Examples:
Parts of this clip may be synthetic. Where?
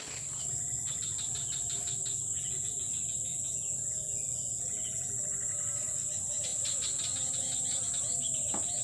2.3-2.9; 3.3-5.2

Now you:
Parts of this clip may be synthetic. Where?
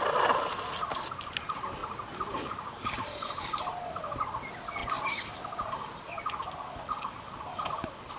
none